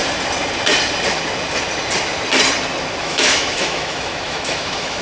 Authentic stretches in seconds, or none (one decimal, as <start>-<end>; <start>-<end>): 0.0-3.0